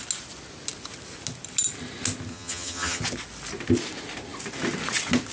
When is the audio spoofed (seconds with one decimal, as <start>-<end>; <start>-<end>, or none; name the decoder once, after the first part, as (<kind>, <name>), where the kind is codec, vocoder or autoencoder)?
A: 2.3-3.0 (vocoder, HiFi-GAN)